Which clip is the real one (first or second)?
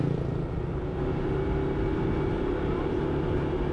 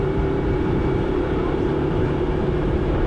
first